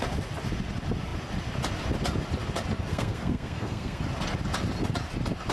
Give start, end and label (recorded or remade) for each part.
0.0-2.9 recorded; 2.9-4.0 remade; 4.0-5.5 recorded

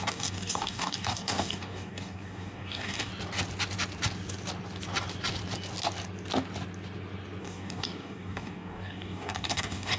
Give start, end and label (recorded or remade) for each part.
0.0-3.1 remade; 3.1-7.4 recorded; 7.4-10.0 remade

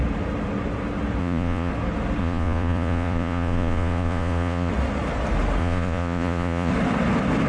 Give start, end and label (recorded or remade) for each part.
0.0-1.2 recorded; 1.2-1.7 remade; 1.7-2.2 recorded; 2.2-4.7 remade; 4.7-5.6 recorded; 5.6-6.7 remade; 6.7-7.5 recorded

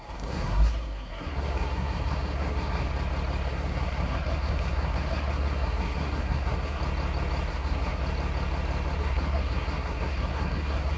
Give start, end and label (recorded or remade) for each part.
0.0-2.9 remade; 2.9-3.5 recorded; 3.5-6.8 remade; 6.8-7.5 recorded; 7.5-8.0 remade; 8.0-9.0 recorded; 9.0-11.0 remade

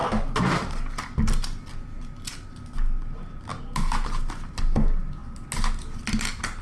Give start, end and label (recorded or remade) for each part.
0.0-6.6 recorded